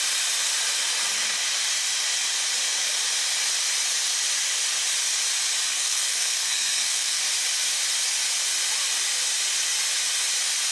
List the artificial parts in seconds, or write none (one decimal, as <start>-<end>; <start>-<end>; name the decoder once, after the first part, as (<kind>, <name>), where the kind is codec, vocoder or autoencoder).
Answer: 5.7-7.2 (codec, SNAC)